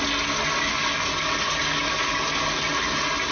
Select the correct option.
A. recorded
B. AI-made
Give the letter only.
A